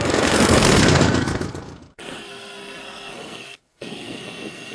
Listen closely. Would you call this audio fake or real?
fake